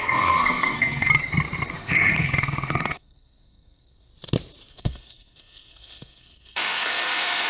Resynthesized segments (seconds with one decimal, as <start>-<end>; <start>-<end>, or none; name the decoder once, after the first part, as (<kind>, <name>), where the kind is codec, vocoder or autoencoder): 0.0-1.1 (codec, SNAC); 1.7-4.1; 4.7-7.5